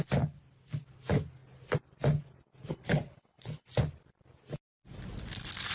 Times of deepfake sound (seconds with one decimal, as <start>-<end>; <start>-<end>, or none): 2.7-3.7